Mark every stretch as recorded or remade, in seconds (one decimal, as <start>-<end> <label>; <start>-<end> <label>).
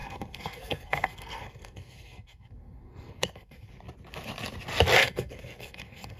0.0-3.7 remade; 3.7-5.0 recorded; 5.0-6.2 remade